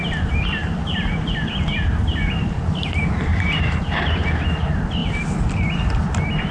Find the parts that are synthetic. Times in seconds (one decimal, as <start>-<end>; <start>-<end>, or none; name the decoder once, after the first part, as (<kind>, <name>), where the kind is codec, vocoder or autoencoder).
0.6-2.4 (vocoder, BigVGAN v2); 3.3-4.0